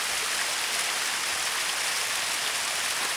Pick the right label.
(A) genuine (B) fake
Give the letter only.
A